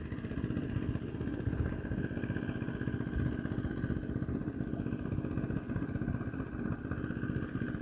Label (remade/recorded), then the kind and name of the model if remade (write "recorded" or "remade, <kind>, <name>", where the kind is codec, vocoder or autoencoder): recorded